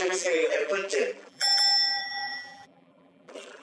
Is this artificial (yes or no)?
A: yes